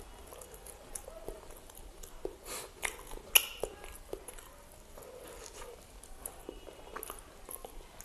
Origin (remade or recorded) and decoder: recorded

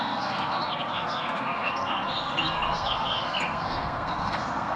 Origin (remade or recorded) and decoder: remade, codec, SNAC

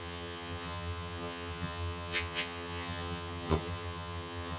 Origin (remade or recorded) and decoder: remade, vocoder, HiFi-GAN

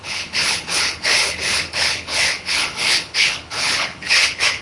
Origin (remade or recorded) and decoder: remade, codec, HILCodec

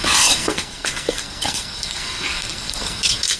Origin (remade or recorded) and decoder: remade, codec, SNAC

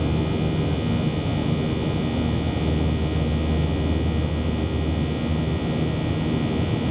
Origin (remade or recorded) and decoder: recorded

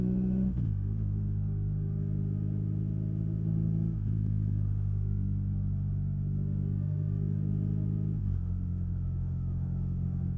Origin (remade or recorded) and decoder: remade, autoencoder, DAC-VAE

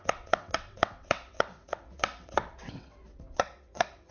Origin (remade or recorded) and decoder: remade, vocoder, WaveNeXt